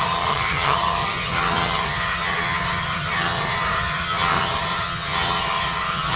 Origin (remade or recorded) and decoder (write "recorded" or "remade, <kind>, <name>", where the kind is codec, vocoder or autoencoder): remade, vocoder, HiFi-GAN